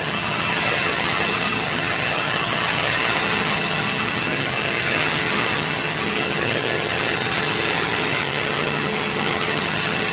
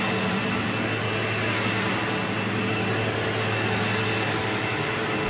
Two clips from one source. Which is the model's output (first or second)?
first